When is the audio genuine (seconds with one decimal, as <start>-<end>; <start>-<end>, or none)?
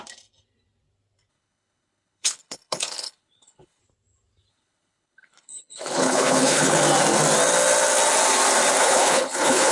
0.0-1.3; 3.8-4.5; 6.8-8.8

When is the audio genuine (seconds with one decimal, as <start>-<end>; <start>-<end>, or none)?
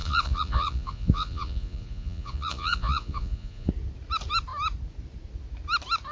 3.7-6.1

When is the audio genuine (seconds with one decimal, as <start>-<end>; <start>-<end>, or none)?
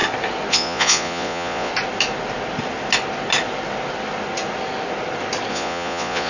0.0-0.5; 1.7-5.5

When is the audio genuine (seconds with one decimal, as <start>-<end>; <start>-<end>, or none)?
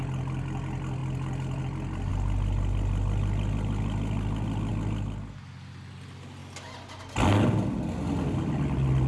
0.0-9.1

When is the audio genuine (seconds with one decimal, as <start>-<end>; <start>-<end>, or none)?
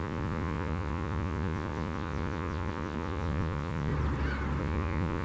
3.9-4.6